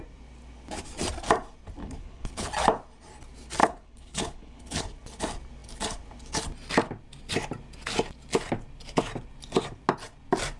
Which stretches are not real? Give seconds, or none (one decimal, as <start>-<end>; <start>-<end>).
1.8-2.5; 3.6-4.8